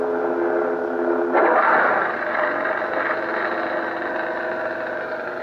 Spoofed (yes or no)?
no